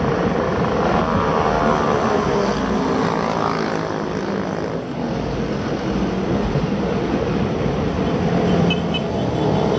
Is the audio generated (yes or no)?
no